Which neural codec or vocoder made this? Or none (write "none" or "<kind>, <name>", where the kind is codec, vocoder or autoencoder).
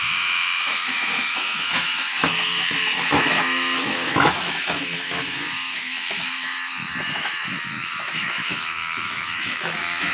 autoencoder, DAC-VAE